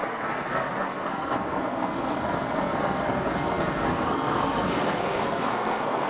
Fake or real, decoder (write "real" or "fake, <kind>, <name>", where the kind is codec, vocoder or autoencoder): fake, codec, SNAC